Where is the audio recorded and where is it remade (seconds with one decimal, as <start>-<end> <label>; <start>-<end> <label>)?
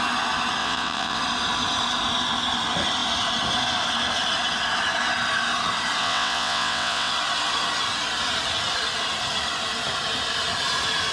0.0-0.6 recorded; 0.6-1.2 remade; 1.2-6.0 recorded; 6.0-7.1 remade; 7.1-11.1 recorded